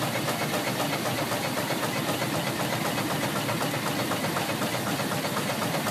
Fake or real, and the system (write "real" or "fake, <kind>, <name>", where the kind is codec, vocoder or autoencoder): real